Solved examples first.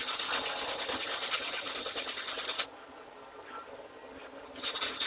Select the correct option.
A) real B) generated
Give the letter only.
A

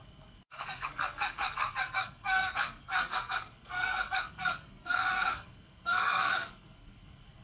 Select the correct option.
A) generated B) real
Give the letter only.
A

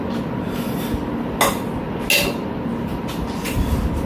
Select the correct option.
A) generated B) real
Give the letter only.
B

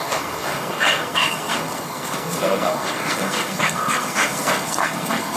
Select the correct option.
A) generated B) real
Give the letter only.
A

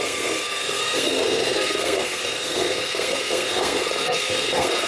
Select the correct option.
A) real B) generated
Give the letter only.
B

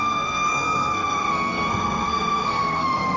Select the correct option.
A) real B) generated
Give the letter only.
B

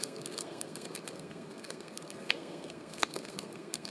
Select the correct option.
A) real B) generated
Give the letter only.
B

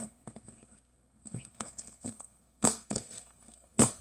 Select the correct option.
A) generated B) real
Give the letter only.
A